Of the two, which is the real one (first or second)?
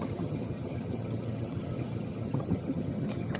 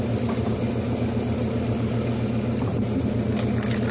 second